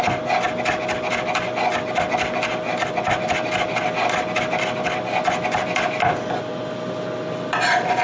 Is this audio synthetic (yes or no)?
no